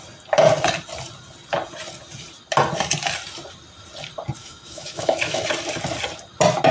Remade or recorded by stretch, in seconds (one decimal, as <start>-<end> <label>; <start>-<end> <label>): 0.0-4.4 recorded; 4.4-5.5 remade; 5.5-6.7 recorded